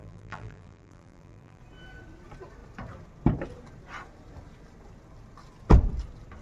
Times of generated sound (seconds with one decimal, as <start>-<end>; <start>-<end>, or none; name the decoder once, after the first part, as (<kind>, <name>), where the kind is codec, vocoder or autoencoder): 0.0-1.6 (vocoder, BigVGAN v2)